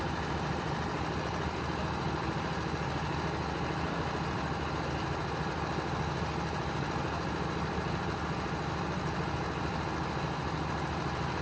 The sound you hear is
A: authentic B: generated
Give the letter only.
A